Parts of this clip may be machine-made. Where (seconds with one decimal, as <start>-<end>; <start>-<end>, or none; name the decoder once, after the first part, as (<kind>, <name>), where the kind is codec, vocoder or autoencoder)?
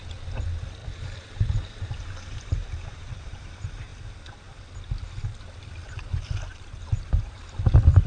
0.8-3.5 (vocoder, BigVGAN v2); 6.5-7.4